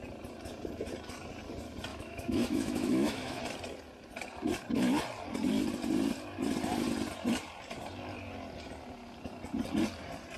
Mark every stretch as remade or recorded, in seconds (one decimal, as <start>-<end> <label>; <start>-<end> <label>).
0.0-1.9 recorded; 1.9-3.4 remade; 3.4-10.4 recorded